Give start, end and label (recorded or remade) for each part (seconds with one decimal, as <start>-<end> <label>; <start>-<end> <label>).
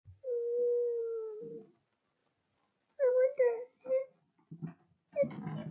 0.0-1.0 recorded; 1.0-1.8 remade; 1.8-5.7 recorded